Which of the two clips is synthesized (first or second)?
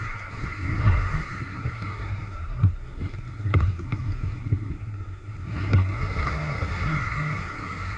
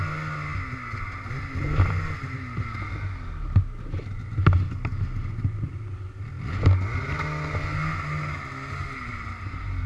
first